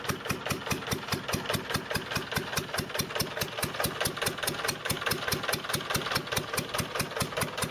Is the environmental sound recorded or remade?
recorded